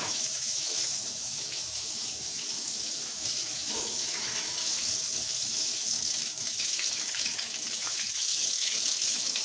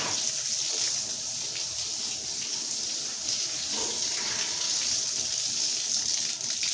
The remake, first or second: first